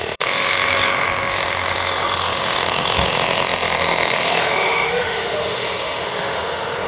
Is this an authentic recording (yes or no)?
no